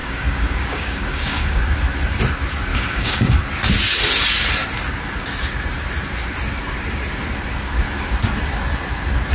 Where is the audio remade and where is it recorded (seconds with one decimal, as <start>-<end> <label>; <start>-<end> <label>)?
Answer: 0.0-1.6 remade; 1.6-2.7 recorded; 2.7-3.3 remade; 3.3-9.3 recorded